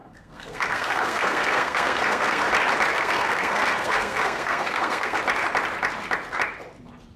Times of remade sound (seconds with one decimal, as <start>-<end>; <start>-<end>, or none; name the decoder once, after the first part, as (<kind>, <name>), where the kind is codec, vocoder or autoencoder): 0.0-2.5 (codec, SNAC); 2.9-5.2